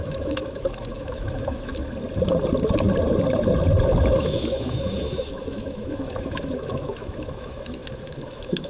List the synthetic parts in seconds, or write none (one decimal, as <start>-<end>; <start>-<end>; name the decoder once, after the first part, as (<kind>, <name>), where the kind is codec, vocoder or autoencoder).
0.0-1.7 (autoencoder, DAC-VAE); 4.0-8.7